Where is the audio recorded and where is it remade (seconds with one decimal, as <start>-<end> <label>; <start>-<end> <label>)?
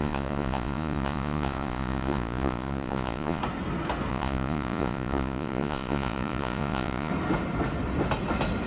0.0-3.4 remade; 3.4-4.1 recorded; 4.1-7.1 remade; 7.1-8.7 recorded